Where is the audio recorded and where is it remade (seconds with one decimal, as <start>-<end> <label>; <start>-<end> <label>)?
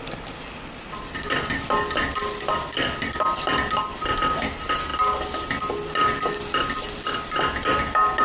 0.0-8.2 recorded